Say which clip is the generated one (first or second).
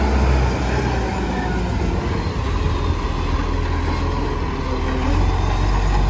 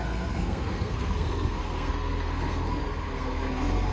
second